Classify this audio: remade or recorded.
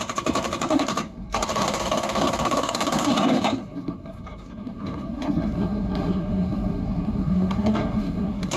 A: remade